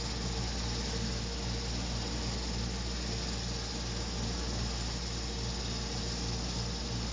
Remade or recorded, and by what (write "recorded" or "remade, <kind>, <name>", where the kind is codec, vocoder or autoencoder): recorded